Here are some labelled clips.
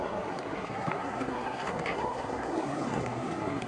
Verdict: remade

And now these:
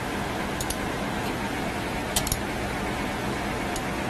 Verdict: recorded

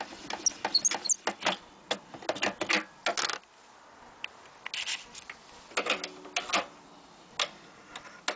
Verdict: recorded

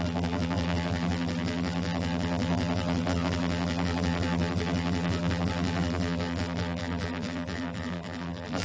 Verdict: remade